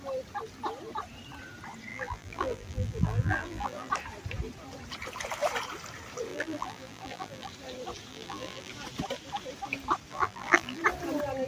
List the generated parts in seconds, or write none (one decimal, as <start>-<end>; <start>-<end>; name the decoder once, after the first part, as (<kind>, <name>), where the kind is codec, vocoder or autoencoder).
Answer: 1.9-3.9 (vocoder, BigVGAN v2); 6.3-7.5; 8.1-8.7; 10.1-10.8